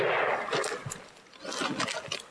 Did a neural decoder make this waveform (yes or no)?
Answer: no